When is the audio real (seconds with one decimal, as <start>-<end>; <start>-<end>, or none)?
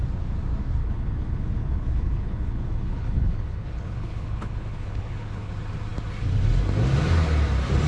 0.0-0.8; 5.5-7.9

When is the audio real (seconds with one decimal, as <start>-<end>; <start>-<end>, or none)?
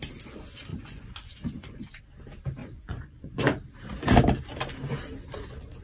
0.0-0.7; 2.0-2.6; 3.5-5.8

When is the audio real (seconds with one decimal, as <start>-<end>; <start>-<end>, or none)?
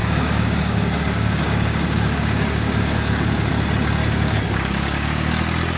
3.5-4.0; 5.3-5.8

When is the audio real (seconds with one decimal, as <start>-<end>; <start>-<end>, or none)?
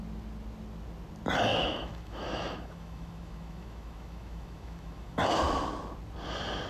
0.0-1.5; 5.2-6.7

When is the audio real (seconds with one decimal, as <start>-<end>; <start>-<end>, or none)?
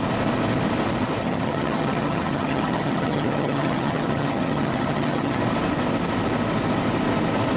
0.0-1.2; 5.4-7.6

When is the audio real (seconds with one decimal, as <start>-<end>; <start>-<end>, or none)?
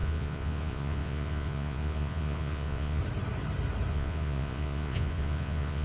3.0-3.9